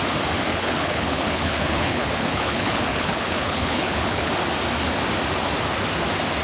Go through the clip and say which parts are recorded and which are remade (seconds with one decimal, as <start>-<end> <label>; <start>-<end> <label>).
0.0-0.5 recorded; 0.5-4.3 remade; 4.3-6.4 recorded